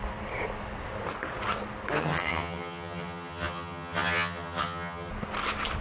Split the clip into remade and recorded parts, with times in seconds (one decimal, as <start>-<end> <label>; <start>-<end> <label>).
0.0-2.0 recorded; 2.0-5.1 remade; 5.1-5.8 recorded